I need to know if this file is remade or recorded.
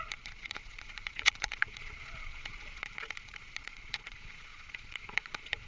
remade